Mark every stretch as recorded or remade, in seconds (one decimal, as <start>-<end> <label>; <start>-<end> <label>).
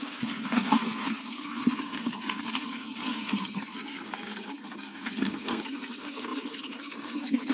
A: 0.0-7.5 remade